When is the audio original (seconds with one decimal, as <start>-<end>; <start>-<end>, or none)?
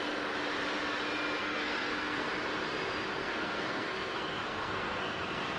0.0-1.4; 2.3-3.2